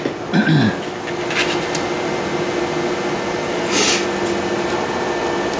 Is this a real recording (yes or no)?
yes